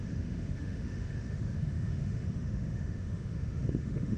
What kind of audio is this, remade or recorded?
remade